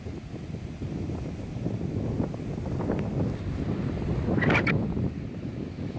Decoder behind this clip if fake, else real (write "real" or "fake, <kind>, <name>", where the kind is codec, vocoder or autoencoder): real